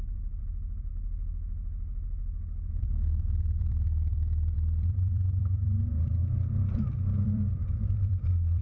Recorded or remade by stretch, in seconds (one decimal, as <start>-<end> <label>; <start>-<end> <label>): 0.0-0.9 remade; 0.9-2.8 recorded; 2.8-6.2 remade; 6.2-6.7 recorded; 6.7-8.6 remade